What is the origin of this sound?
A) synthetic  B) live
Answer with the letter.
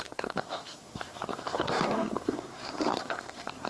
A